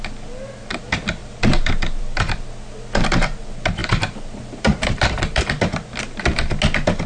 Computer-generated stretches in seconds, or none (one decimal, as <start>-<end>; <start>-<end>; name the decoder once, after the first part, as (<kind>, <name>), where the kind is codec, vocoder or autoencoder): 3.8-5.4 (vocoder, BigVGAN v2)